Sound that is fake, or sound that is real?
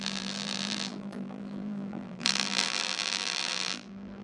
fake